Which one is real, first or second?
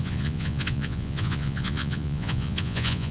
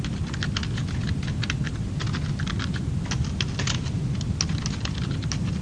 second